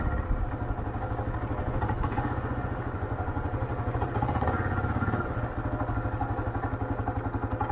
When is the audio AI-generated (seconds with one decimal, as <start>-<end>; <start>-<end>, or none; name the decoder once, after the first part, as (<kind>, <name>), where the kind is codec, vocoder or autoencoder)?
1.6-5.2 (vocoder, Vocos)